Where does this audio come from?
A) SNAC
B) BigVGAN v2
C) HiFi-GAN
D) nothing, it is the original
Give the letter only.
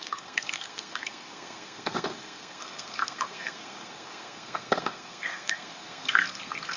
A